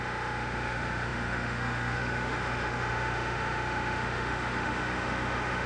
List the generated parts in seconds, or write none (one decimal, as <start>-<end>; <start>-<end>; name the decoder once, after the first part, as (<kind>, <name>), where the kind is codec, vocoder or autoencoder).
0.0-5.7 (autoencoder, DAC-VAE)